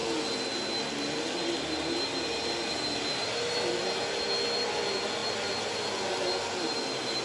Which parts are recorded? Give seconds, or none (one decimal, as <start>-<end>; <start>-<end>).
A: 0.0-7.2